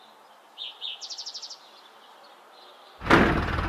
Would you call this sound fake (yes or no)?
no